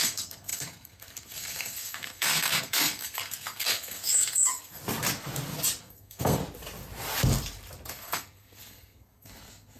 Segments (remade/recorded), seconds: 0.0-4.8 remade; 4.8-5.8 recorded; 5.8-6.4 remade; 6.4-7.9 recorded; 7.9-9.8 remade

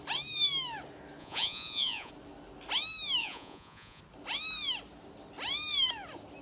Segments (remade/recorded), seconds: 0.0-1.2 recorded; 1.2-2.1 remade; 2.1-3.2 recorded; 3.2-4.0 remade; 4.0-6.4 recorded

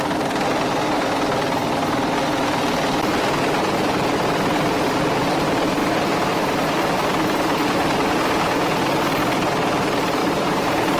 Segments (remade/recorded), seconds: 0.0-5.8 recorded; 5.8-6.4 remade; 6.4-10.2 recorded; 10.2-11.0 remade

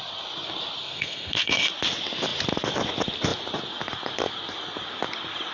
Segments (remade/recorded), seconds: 0.0-0.8 recorded; 0.8-1.7 remade; 1.7-5.5 recorded

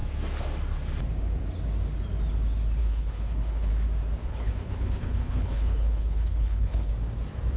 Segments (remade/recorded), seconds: 0.0-2.8 recorded; 2.8-3.7 remade; 3.7-4.2 recorded; 4.2-6.9 remade; 6.9-7.6 recorded

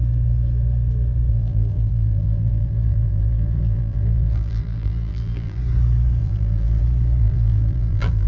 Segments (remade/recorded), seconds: 0.0-1.3 recorded; 1.3-5.6 remade; 5.6-6.2 recorded; 6.2-6.8 remade; 6.8-7.2 recorded; 7.2-8.3 remade